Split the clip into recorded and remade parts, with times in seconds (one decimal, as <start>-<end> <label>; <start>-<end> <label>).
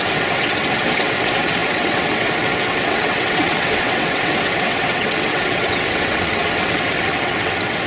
0.0-7.9 remade